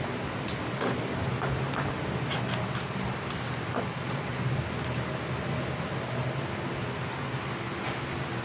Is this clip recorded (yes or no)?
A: yes